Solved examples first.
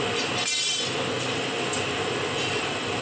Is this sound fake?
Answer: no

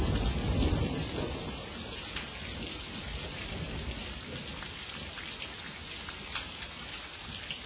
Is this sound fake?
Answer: no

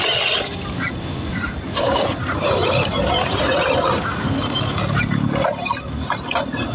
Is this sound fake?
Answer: no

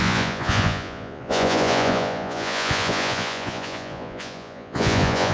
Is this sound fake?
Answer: yes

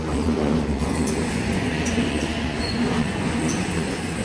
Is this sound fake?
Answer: yes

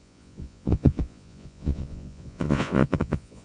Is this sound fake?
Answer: yes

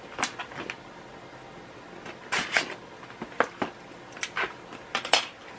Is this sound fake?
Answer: no